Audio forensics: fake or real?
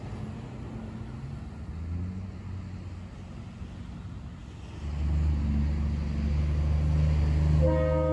real